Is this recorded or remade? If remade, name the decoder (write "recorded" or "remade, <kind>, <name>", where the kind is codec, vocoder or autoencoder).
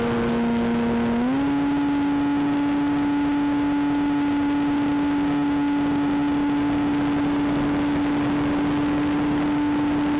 recorded